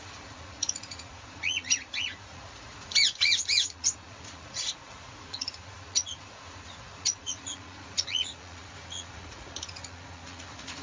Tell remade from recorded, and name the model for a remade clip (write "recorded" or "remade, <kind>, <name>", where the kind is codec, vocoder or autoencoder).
remade, vocoder, Vocos